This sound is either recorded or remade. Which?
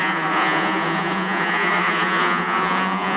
remade